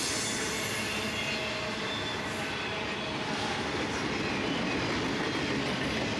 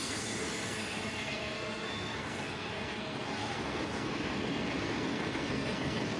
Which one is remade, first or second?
second